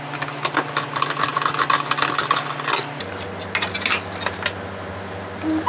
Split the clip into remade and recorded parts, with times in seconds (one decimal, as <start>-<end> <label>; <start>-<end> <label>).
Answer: 0.0-5.7 recorded